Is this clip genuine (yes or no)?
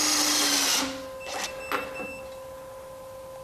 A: yes